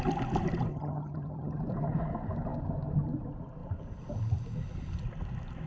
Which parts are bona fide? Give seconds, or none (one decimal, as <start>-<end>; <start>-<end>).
0.0-0.7; 1.6-5.7